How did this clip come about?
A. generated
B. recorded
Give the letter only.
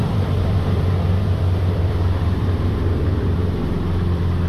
A